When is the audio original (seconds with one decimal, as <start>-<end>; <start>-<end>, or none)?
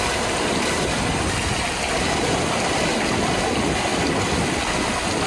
0.0-5.3